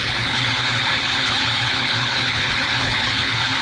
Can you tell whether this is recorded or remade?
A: remade